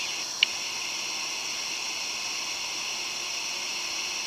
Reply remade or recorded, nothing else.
recorded